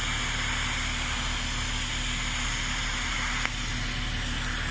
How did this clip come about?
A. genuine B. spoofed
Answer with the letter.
A